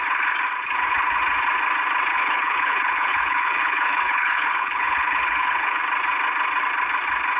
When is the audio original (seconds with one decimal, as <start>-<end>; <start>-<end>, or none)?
0.0-2.1; 5.8-7.4